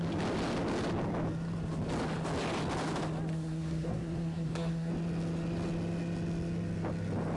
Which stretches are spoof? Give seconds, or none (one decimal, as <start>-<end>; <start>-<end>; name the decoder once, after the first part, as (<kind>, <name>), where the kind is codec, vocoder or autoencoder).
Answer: 3.3-4.9 (codec, SNAC)